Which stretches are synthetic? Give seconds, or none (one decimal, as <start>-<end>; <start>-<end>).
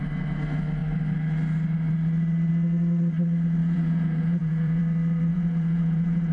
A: 3.6-4.8; 5.3-6.3